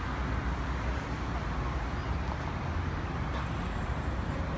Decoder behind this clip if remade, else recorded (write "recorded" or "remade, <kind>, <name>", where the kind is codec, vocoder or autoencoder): recorded